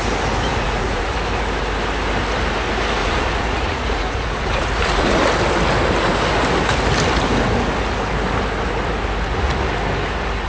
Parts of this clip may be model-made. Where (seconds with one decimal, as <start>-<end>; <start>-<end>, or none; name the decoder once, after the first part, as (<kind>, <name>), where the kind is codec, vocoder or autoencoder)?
0.5-1.0 (vocoder, Vocos); 3.0-5.2

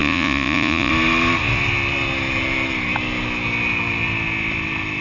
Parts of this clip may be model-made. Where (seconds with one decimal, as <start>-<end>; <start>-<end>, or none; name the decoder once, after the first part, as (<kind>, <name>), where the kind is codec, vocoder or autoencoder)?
0.0-0.9 (vocoder, Vocos)

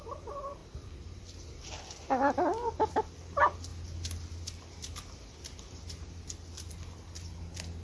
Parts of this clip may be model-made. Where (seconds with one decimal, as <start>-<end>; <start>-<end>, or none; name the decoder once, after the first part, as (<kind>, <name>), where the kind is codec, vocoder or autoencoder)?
none

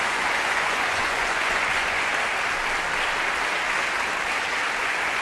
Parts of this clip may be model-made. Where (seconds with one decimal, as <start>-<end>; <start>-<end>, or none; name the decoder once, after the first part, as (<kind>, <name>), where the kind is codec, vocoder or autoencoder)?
0.0-2.1 (vocoder, Vocos); 4.8-5.2

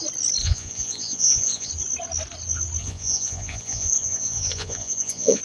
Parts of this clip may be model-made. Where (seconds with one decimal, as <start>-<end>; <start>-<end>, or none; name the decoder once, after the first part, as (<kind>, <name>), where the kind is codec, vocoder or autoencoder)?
0.4-1.7 (vocoder, Vocos); 2.8-5.4

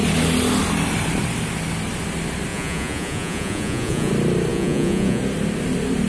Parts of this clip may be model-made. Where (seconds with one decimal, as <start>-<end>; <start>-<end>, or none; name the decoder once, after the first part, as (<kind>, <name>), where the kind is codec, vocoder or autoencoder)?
2.5-4.1 (vocoder, Vocos); 4.5-5.2